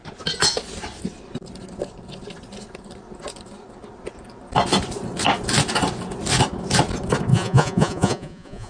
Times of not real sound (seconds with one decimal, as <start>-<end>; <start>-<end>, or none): 7.3-8.7